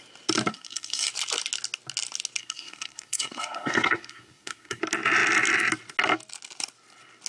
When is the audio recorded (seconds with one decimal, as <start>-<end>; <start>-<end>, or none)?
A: 0.0-0.5; 1.1-2.4; 4.8-7.3